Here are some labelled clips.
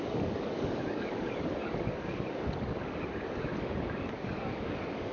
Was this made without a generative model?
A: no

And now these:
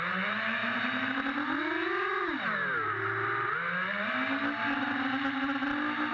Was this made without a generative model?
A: yes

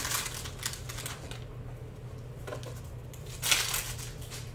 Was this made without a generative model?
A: yes